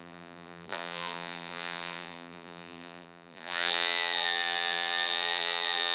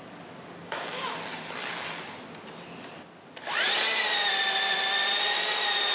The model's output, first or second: first